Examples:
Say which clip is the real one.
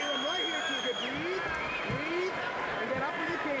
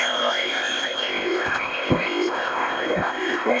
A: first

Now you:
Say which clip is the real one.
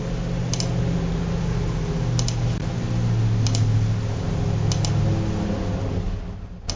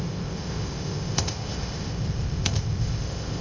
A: first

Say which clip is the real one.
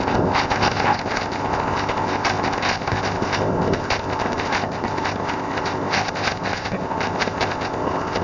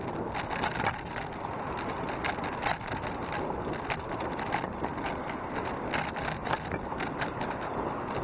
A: second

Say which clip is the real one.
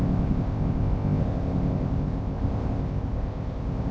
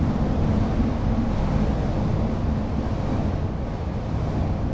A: second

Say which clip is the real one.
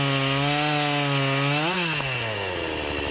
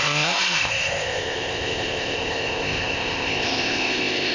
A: first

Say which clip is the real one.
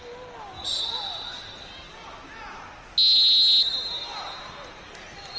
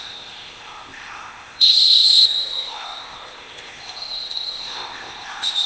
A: first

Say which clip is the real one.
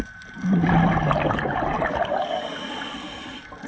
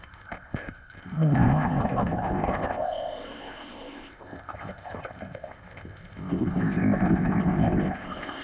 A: first